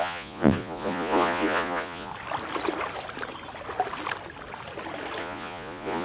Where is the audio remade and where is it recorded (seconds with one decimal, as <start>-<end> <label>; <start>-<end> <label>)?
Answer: 0.0-2.1 remade; 2.1-5.2 recorded; 5.2-6.0 remade